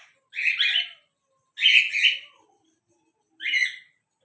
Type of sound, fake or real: real